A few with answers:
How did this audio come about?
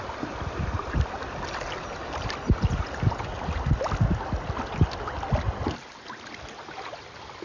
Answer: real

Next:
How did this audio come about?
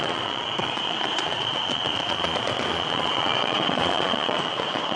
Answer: fake